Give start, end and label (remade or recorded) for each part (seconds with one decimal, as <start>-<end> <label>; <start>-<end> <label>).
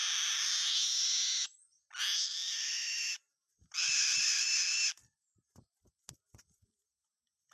0.0-7.5 recorded